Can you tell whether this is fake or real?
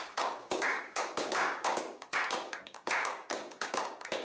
fake